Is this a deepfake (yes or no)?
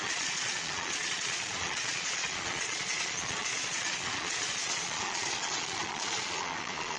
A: yes